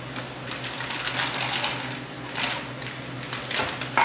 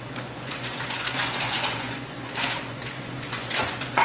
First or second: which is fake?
second